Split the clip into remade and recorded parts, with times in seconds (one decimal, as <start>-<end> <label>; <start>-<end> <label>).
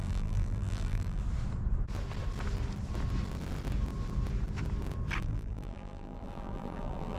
0.0-1.2 remade; 1.2-5.2 recorded; 5.2-7.2 remade